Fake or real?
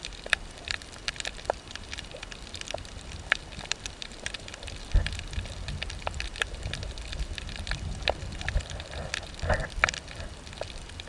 fake